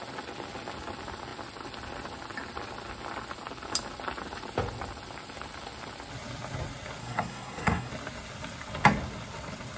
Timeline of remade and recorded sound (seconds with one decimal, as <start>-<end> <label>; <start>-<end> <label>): 0.0-7.0 recorded; 7.0-7.9 remade; 7.9-9.8 recorded